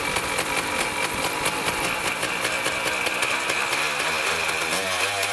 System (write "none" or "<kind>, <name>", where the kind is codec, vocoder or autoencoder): none